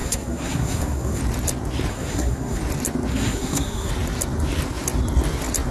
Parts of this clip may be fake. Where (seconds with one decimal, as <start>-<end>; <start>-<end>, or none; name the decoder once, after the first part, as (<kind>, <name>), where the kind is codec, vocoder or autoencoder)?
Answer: 0.0-1.2 (codec, SNAC); 1.9-2.6; 3.1-3.9